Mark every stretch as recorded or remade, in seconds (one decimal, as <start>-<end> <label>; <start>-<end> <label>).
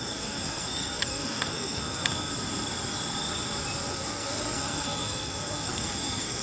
0.0-2.3 remade; 2.3-3.9 recorded; 3.9-6.4 remade